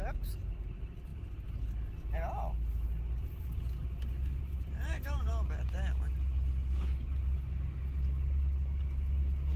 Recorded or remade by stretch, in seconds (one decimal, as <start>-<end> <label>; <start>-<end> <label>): 0.0-1.1 remade; 1.1-4.4 recorded; 4.4-5.3 remade; 5.3-9.6 recorded